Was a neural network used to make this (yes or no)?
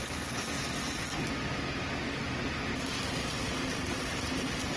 no